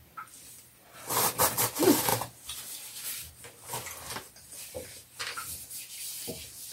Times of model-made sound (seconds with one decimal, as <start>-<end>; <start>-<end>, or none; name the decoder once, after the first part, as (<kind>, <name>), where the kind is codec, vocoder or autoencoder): none